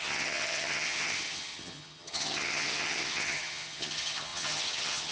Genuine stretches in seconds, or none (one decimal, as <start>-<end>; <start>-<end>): none